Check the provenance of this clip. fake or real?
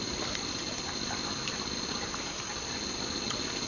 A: real